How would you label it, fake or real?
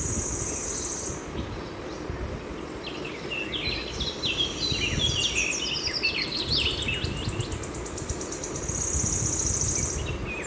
real